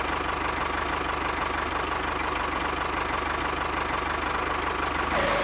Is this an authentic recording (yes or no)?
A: yes